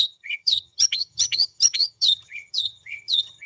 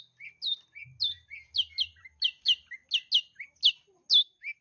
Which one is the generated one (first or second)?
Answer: first